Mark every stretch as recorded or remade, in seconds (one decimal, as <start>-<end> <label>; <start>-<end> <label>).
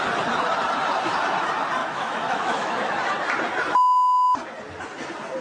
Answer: 0.0-1.8 recorded; 1.8-2.9 remade; 2.9-5.4 recorded